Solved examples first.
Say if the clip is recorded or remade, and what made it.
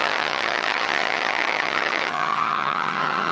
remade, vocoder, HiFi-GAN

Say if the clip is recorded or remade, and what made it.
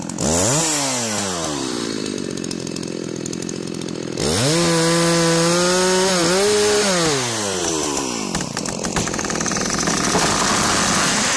recorded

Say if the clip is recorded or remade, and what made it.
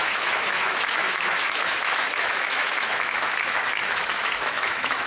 remade, autoencoder, DAC-VAE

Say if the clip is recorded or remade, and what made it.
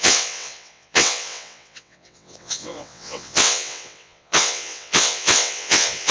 remade, vocoder, WaveNeXt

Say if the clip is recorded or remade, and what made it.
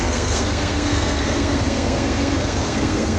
remade, codec, SNAC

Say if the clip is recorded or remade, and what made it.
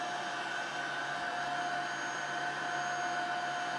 recorded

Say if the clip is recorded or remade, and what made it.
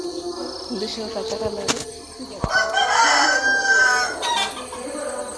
recorded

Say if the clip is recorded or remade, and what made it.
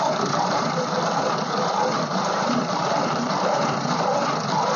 remade, vocoder, BigVGAN v2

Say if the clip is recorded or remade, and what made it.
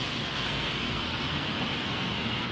remade, codec, SNAC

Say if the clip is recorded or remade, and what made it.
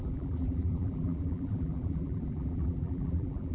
remade, vocoder, BigVGAN v2